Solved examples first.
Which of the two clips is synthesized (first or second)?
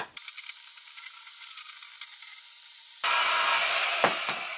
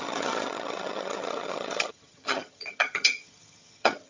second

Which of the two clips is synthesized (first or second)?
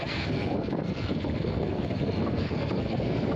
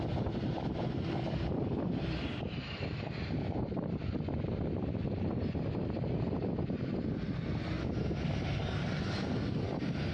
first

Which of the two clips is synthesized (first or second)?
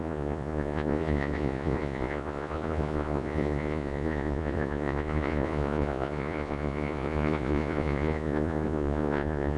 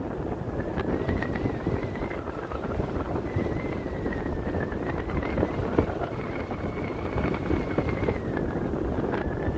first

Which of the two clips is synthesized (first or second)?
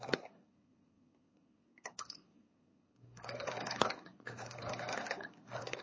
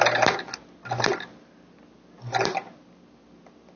first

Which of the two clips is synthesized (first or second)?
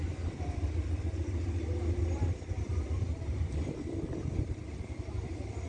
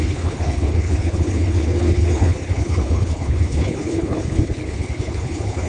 second